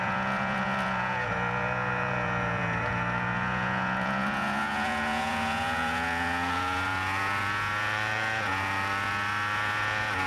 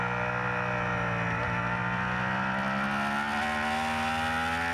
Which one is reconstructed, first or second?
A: first